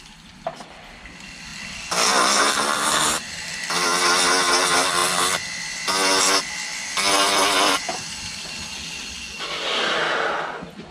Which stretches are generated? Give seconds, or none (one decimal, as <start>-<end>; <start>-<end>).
none